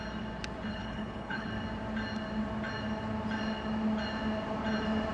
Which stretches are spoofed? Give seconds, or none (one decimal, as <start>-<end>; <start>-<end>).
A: 0.7-1.5